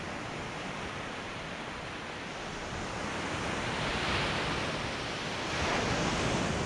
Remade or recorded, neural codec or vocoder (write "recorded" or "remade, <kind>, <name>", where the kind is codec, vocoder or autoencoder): recorded